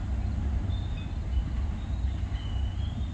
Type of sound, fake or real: real